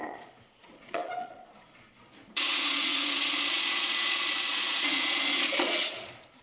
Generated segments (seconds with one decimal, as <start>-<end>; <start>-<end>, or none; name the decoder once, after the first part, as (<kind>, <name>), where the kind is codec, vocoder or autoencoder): 0.0-6.4 (vocoder, Vocos)